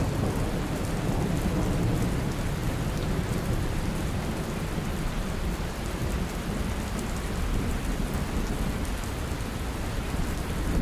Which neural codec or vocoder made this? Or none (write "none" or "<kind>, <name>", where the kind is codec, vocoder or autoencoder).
none